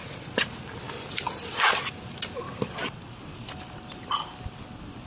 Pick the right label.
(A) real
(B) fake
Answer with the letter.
A